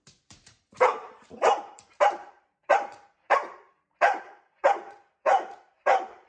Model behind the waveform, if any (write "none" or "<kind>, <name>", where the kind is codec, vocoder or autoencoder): vocoder, BigVGAN v2